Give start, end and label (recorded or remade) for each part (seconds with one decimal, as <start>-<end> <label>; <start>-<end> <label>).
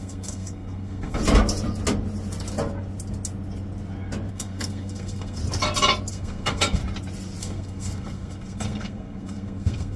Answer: 0.0-1.2 remade; 1.2-4.3 recorded; 4.3-5.4 remade; 5.4-6.1 recorded; 6.1-6.8 remade; 6.8-7.4 recorded; 7.4-10.0 remade